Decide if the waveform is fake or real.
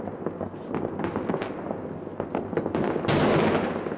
real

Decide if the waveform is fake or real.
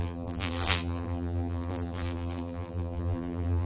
fake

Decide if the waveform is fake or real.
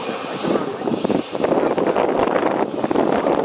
real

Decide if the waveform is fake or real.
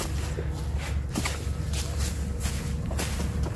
real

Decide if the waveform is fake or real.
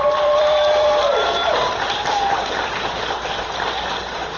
fake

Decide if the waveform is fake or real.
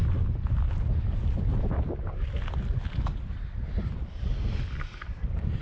real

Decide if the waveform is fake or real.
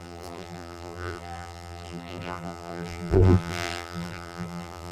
fake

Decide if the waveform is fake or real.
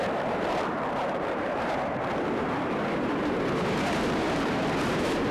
fake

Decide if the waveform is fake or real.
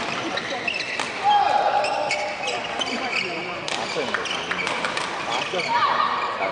real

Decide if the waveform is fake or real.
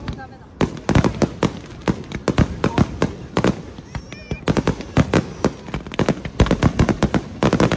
real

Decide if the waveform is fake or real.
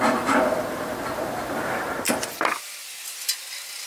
fake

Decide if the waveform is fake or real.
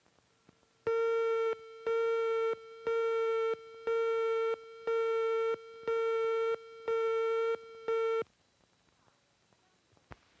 real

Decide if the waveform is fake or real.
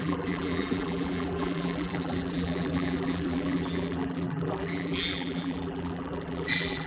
fake